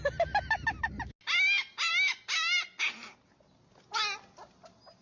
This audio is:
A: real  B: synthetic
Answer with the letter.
A